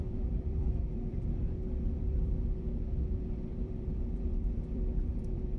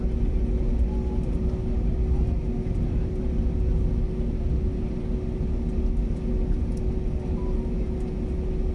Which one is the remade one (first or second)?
first